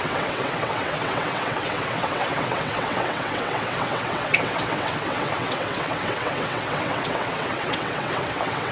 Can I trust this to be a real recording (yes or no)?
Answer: no